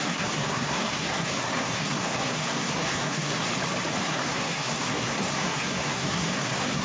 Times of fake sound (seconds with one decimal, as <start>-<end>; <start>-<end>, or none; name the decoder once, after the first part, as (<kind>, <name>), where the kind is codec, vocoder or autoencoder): 0.0-3.5 (codec, SNAC); 4.0-6.8